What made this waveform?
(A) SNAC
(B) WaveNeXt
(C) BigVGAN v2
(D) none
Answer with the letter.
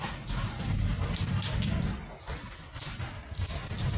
D